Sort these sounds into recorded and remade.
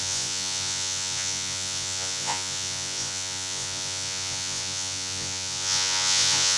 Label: remade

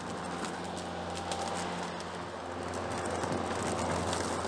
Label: recorded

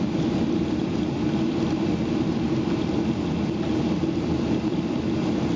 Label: recorded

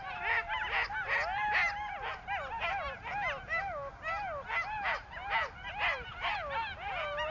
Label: recorded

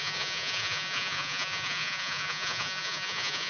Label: remade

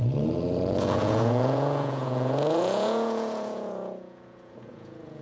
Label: remade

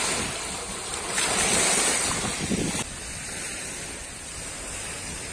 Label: recorded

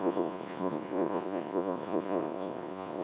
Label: remade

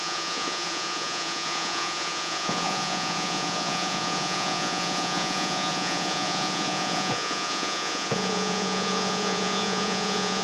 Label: remade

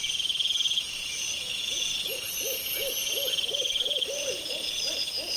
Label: remade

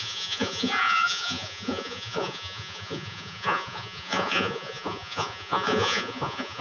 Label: remade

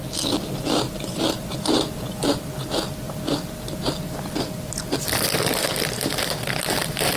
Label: recorded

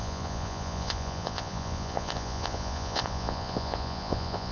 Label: remade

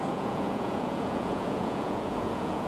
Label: remade